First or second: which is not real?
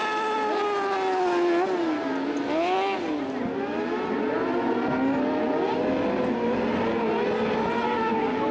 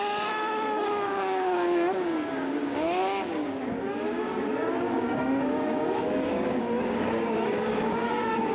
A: second